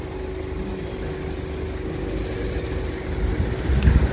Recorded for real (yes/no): yes